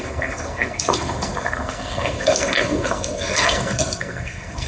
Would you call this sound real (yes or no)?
no